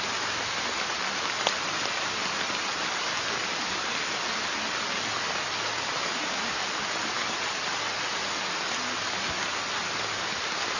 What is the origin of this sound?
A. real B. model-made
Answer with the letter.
A